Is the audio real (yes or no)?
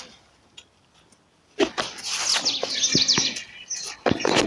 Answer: yes